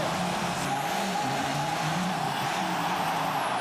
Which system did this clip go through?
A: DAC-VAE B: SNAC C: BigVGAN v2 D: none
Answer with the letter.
D